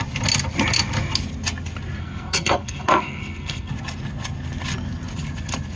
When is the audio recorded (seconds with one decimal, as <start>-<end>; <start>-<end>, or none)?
0.0-2.0; 3.7-5.8